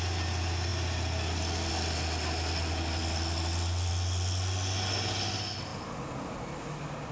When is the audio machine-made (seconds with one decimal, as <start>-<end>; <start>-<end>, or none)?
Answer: none